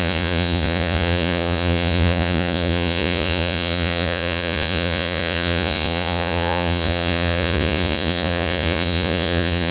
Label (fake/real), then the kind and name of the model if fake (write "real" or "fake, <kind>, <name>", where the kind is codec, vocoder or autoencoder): fake, vocoder, Vocos